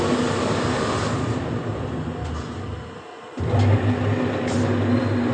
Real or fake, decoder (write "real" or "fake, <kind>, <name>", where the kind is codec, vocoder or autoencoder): real